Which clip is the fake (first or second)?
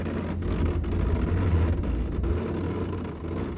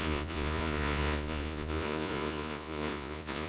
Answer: second